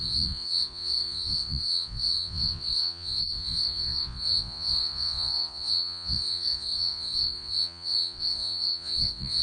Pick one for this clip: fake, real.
fake